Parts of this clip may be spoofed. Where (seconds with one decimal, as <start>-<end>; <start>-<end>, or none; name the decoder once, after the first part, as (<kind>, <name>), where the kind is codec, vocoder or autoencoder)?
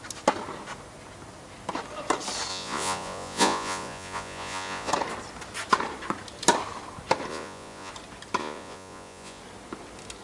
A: 2.5-4.9 (vocoder, Vocos); 7.3-7.9; 8.4-9.4